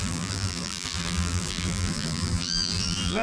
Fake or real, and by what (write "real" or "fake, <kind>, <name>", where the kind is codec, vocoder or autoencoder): fake, vocoder, BigVGAN v2